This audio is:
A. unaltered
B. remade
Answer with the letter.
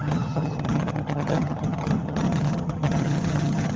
B